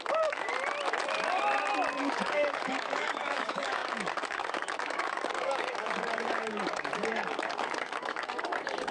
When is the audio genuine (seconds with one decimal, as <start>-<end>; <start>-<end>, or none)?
0.5-2.0